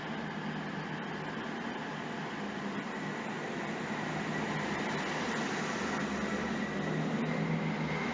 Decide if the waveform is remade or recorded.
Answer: recorded